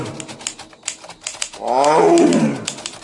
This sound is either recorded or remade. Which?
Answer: recorded